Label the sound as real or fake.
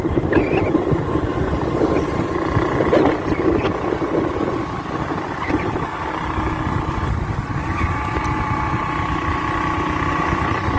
real